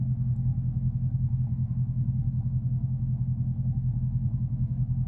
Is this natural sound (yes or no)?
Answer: no